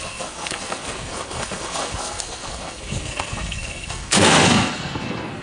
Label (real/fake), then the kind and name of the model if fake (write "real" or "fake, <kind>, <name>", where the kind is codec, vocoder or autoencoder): fake, codec, SNAC